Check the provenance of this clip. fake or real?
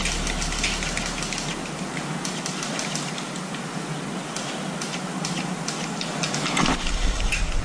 real